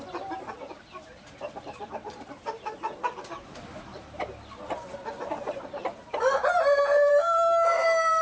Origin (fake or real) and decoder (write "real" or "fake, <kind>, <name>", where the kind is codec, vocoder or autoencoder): fake, vocoder, BigVGAN v2